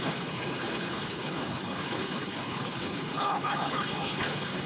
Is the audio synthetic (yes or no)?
yes